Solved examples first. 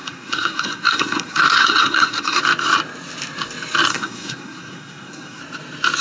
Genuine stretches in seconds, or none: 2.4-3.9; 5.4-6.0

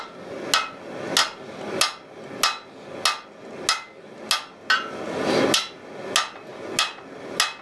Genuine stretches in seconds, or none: 0.0-7.6

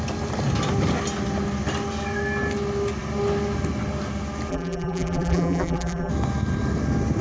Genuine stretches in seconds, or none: 0.0-4.5; 6.1-7.2